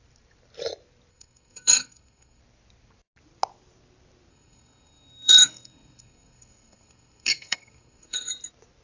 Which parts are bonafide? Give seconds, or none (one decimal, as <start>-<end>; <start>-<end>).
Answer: 0.0-1.1; 2.4-4.3; 8.3-8.8